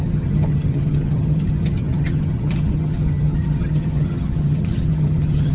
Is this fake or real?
fake